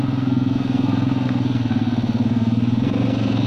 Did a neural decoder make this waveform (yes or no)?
yes